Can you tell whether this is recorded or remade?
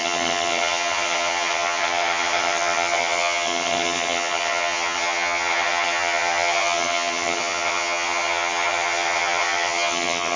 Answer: remade